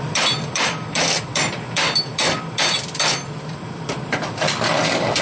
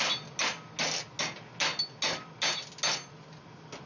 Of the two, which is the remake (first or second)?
first